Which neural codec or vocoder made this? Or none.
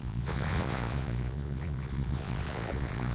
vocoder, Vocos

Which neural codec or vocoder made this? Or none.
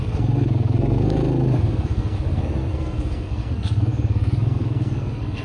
codec, SNAC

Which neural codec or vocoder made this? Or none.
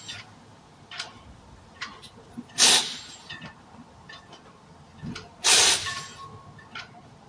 none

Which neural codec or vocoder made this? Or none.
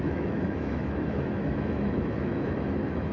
autoencoder, DAC-VAE